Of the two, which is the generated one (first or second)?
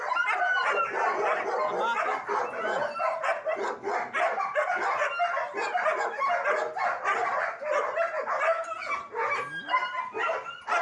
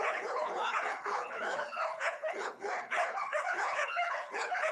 second